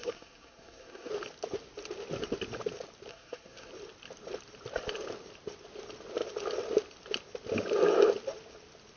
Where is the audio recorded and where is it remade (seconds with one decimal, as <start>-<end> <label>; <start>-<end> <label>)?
0.0-1.1 remade; 1.1-3.1 recorded; 3.1-3.7 remade; 3.7-9.0 recorded